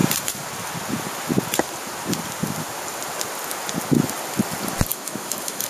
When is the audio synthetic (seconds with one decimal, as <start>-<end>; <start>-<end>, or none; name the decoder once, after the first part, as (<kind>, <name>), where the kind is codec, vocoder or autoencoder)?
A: 4.9-5.7 (autoencoder, DAC-VAE)